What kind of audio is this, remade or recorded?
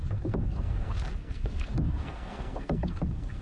remade